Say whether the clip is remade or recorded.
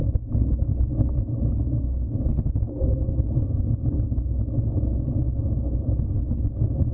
recorded